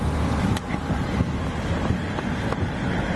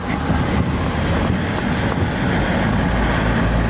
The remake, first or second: first